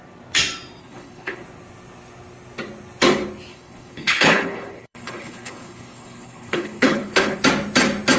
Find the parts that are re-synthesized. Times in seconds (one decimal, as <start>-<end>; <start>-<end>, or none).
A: 0.8-1.4; 3.5-7.4